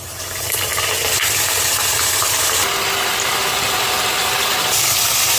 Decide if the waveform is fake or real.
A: real